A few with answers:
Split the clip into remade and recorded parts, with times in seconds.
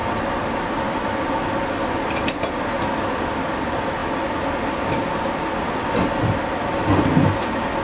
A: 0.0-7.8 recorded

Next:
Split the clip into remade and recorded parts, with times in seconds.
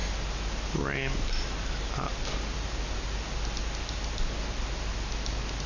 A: 0.0-5.7 recorded